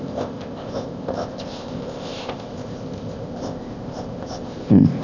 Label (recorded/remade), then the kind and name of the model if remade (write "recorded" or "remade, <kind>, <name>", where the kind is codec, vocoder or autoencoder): remade, codec, ZipCodec